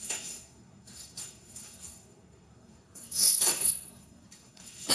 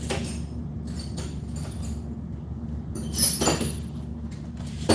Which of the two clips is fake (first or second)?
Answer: first